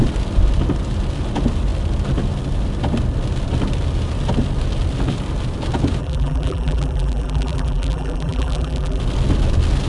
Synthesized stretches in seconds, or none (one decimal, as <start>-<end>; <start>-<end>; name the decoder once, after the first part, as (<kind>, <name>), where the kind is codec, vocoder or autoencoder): 6.0-9.0 (vocoder, BigVGAN v2)